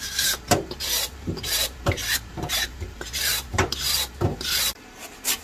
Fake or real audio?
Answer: fake